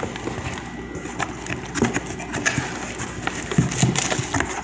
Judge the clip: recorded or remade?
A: recorded